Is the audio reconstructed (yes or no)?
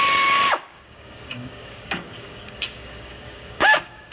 yes